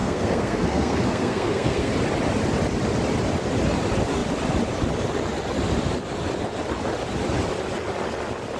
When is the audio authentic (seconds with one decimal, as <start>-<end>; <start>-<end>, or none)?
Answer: 1.9-8.6